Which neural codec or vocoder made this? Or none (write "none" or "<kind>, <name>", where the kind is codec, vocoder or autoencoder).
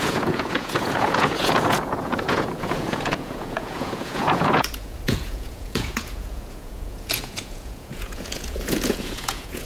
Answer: vocoder, Vocos